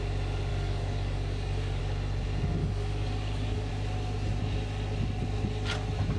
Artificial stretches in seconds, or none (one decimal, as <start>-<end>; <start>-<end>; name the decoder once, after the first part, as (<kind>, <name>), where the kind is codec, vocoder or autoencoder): 0.5-1.8 (codec, DAC); 2.6-3.7